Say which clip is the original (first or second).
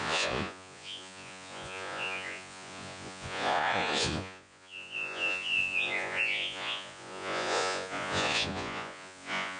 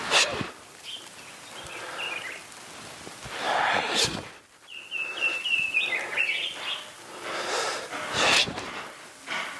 second